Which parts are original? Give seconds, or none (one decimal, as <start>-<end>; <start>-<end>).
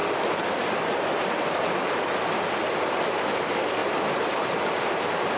0.0-5.4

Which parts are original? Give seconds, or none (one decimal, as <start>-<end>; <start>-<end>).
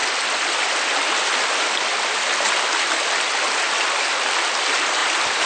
0.0-5.5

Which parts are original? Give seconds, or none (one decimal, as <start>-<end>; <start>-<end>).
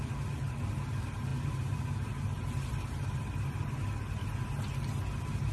0.0-5.5